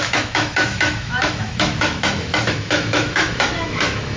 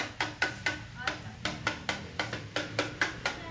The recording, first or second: second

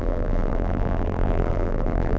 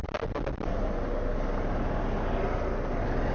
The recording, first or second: second